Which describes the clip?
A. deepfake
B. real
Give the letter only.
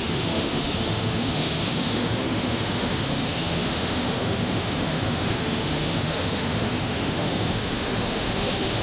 A